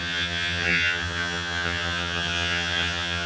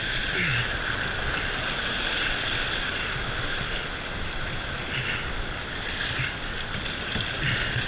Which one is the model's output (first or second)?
first